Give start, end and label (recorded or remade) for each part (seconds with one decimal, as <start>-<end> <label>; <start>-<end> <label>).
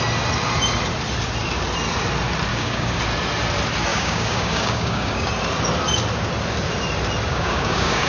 0.0-2.5 recorded; 2.5-3.0 remade; 3.0-3.9 recorded; 3.9-5.3 remade; 5.3-7.3 recorded; 7.3-8.1 remade